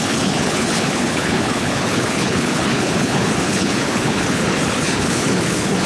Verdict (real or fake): fake